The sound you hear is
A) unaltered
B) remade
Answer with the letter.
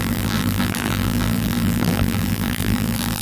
B